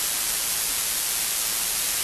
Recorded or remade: recorded